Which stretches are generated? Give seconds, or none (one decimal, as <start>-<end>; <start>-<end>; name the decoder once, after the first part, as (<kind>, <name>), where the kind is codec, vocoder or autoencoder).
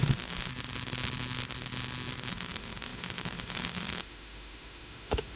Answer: 0.0-0.5 (autoencoder, DAC-VAE); 2.3-5.4